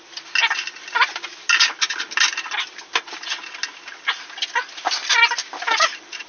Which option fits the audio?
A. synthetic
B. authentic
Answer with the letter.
B